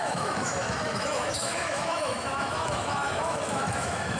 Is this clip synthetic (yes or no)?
yes